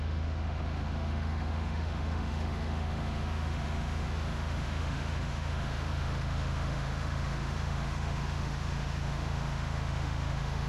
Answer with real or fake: fake